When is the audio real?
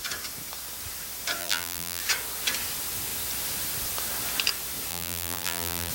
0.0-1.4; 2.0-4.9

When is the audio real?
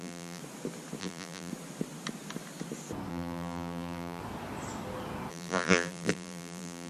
0.4-1.0; 1.5-3.1; 4.2-5.3